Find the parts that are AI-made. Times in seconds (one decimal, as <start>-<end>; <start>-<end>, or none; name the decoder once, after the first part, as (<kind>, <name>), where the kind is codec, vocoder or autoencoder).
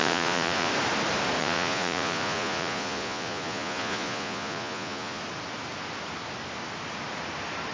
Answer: 0.0-0.7 (vocoder, Vocos); 1.4-5.2